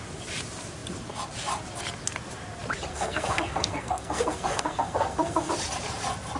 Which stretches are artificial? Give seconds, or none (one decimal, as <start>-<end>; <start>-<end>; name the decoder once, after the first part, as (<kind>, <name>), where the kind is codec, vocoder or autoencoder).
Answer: 2.9-5.5 (codec, SNAC)